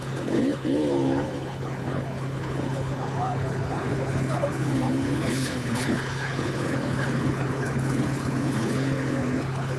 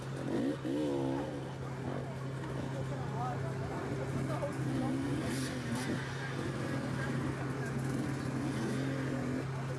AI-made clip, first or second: first